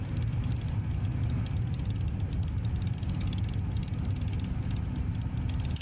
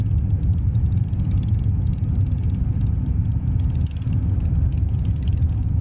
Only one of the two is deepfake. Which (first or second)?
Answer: second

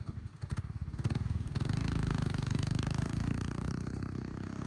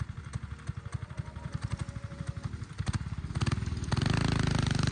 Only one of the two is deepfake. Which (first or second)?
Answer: first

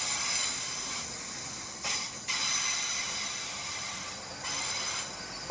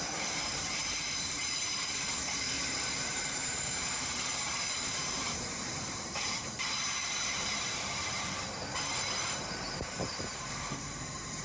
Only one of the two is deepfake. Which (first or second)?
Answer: second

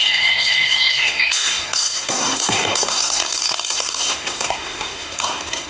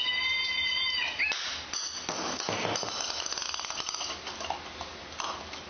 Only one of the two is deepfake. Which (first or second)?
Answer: first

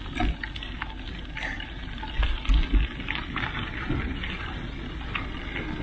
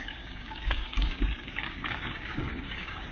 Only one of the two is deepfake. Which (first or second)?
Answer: second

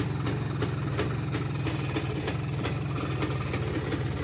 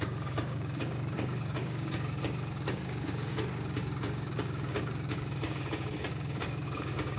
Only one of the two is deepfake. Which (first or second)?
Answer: second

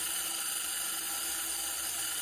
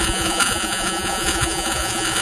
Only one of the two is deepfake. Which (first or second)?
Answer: second